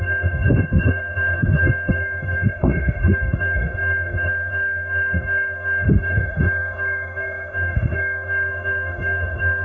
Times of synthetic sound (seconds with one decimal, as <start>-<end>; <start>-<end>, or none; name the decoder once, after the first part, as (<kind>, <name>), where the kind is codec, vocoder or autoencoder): 0.0-9.6 (autoencoder, DAC-VAE)

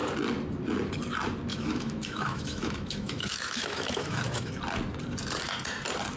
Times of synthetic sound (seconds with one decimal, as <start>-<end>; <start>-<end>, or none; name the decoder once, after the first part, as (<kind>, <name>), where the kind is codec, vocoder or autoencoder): 1.5-4.5 (autoencoder, DAC-VAE)

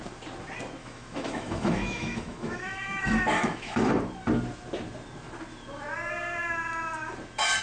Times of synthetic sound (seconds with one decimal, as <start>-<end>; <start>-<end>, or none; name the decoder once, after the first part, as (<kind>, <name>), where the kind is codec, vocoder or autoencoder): 0.8-3.9 (autoencoder, DAC-VAE)

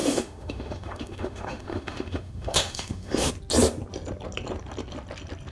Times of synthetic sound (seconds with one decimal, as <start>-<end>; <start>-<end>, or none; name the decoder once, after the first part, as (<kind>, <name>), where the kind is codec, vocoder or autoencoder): 0.0-3.3 (autoencoder, DAC-VAE)

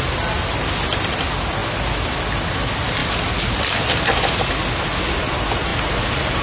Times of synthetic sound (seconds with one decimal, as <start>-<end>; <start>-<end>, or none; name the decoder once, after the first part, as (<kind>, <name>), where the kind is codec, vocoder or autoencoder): none

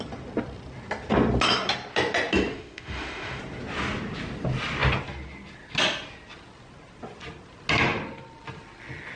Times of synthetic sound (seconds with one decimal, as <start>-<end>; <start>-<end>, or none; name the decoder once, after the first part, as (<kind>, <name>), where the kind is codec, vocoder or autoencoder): 2.5-3.4 (autoencoder, DAC-VAE)